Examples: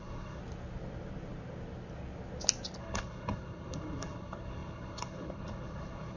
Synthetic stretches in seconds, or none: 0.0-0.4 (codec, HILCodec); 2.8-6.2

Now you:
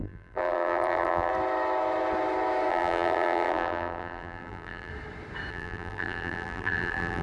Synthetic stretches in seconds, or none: 0.0-1.3 (vocoder, BigVGAN v2); 2.7-4.9; 5.5-7.2